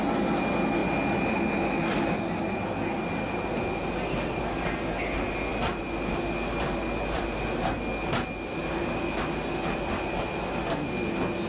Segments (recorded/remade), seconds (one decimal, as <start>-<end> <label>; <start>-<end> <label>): 0.0-11.5 recorded